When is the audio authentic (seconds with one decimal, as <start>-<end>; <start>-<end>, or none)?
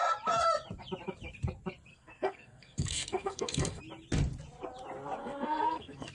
0.0-1.9; 3.8-5.2